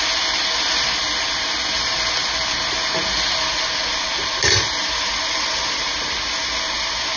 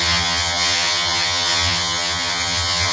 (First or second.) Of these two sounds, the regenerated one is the second